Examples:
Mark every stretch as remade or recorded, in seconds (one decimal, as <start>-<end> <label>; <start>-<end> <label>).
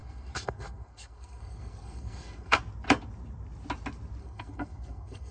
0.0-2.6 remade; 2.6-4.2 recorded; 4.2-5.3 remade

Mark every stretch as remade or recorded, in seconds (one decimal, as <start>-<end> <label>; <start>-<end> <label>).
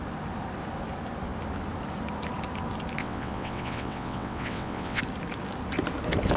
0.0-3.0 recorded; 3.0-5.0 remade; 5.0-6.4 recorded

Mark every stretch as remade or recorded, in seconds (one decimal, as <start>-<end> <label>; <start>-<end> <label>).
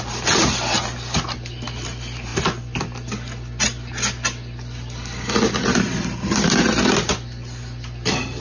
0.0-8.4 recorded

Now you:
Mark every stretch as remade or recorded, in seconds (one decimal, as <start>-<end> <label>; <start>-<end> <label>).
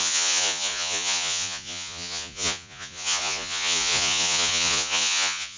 0.0-5.6 remade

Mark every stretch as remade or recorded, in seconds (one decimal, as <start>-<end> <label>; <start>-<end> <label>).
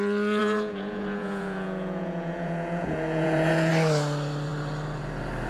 0.0-0.4 recorded; 0.4-3.7 remade; 3.7-5.5 recorded